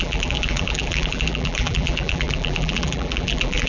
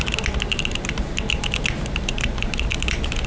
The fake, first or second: first